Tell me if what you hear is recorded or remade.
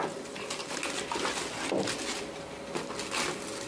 recorded